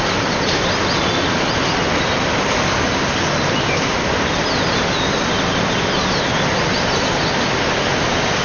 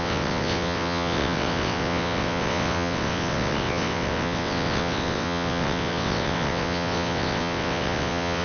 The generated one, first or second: second